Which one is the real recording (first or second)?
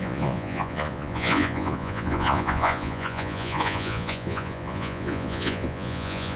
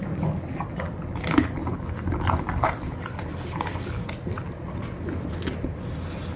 second